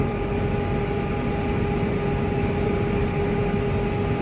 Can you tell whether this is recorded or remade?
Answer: recorded